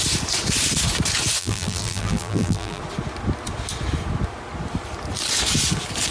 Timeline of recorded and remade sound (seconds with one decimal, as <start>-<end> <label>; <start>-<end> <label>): 0.0-1.4 recorded; 1.4-2.8 remade; 2.8-6.1 recorded